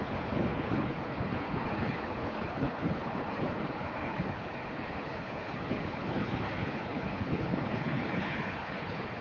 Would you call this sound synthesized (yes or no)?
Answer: yes